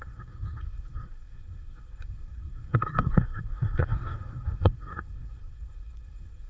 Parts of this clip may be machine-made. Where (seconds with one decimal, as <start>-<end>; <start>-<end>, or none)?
0.0-6.5